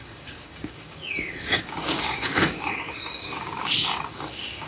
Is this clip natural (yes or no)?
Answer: no